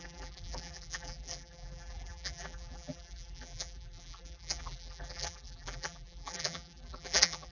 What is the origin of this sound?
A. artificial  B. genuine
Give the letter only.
A